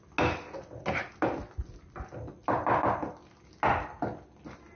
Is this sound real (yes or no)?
yes